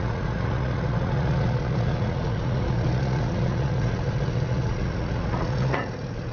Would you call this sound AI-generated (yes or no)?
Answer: yes